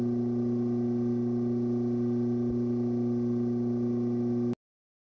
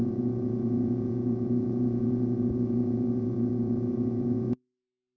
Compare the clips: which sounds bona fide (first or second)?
first